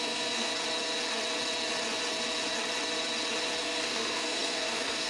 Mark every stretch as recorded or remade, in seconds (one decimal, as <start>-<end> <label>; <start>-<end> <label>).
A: 0.0-0.5 remade; 0.5-3.6 recorded; 3.6-5.1 remade